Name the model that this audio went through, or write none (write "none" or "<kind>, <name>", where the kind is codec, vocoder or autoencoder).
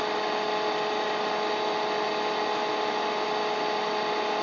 none